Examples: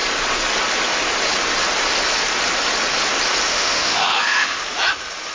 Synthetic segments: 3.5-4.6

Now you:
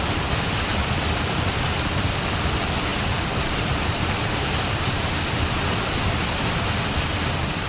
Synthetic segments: 2.9-5.6